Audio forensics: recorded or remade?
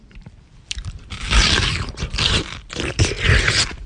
remade